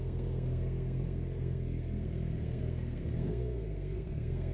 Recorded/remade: remade